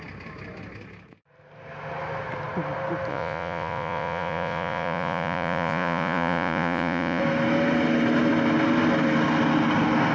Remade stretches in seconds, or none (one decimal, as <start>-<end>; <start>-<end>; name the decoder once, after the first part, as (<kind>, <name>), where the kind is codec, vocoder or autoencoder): 3.1-7.2 (vocoder, Vocos)